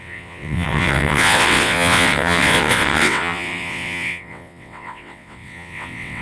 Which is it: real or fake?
fake